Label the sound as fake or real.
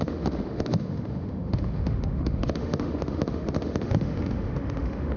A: fake